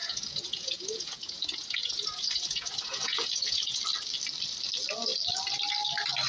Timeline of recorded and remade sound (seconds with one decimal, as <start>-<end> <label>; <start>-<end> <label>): 0.0-3.8 remade; 3.8-6.3 recorded